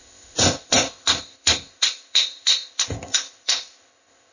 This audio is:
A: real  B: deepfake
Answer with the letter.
B